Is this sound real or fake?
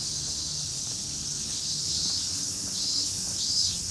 fake